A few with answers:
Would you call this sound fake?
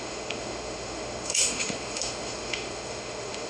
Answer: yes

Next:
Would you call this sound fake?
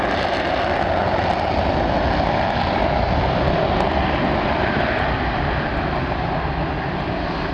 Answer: no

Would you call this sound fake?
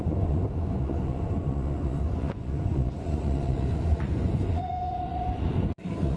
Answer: yes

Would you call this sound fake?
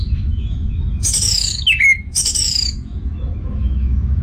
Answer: yes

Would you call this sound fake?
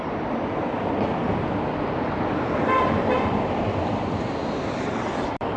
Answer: yes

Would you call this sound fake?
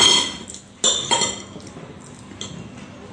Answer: no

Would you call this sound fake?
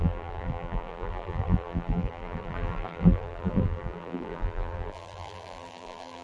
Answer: yes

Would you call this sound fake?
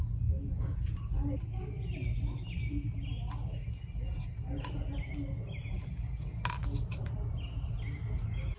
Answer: no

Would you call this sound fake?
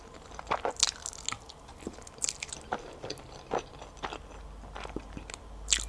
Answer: no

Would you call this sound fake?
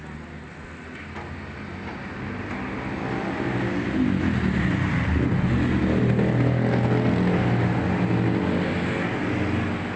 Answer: no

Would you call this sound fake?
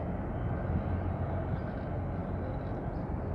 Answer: no